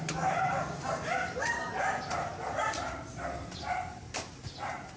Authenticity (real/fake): fake